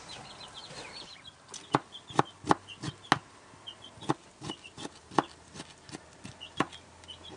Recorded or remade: recorded